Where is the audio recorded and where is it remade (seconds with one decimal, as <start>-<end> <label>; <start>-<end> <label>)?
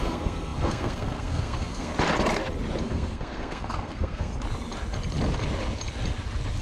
0.0-1.9 remade; 1.9-2.8 recorded; 2.8-4.3 remade; 4.3-6.6 recorded